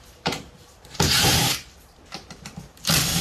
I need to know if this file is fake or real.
fake